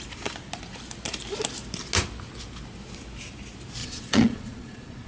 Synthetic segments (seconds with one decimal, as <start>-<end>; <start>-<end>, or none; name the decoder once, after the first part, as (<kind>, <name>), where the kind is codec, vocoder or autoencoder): 3.8-5.1 (vocoder, Vocos)